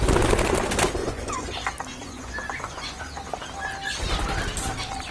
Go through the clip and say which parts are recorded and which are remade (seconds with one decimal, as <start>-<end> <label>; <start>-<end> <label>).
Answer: 0.0-1.0 recorded; 1.0-1.5 remade; 1.5-1.9 recorded; 1.9-3.0 remade; 3.0-5.1 recorded